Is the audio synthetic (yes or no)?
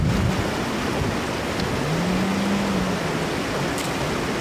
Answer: no